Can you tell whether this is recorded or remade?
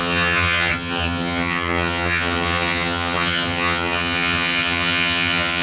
remade